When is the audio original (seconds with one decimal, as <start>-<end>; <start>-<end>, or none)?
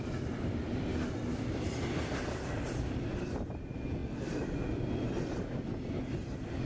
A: 0.0-1.3; 2.3-6.7